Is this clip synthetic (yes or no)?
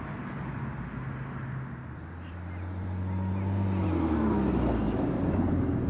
no